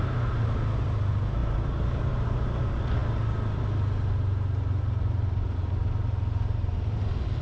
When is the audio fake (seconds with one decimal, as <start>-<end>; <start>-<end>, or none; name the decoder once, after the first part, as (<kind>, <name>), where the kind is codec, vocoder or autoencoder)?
1.4-2.1 (vocoder, BigVGAN v2)